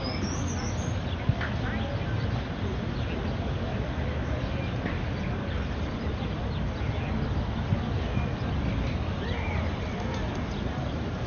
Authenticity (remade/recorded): recorded